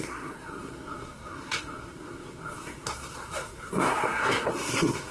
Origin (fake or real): fake